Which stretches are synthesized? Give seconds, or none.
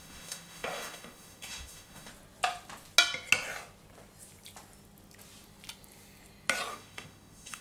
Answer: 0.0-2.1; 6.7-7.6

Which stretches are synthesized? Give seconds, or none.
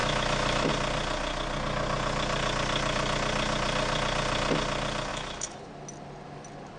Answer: 0.0-0.7; 5.1-5.7